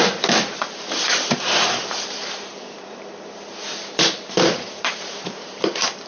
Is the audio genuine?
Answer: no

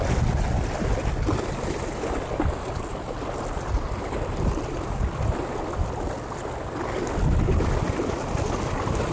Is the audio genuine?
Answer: yes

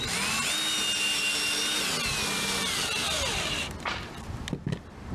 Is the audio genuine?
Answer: yes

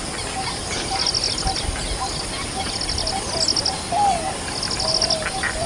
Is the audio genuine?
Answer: yes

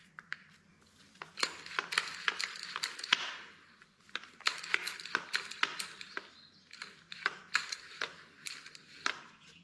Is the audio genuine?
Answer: no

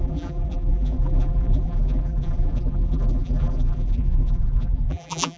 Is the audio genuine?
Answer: no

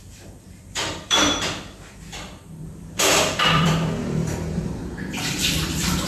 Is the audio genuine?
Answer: no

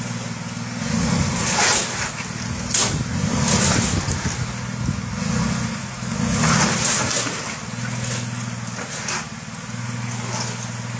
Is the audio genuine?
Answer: yes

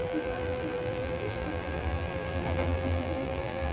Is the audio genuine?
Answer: no